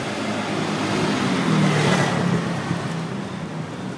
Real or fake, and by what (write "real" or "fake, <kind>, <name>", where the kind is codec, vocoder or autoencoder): real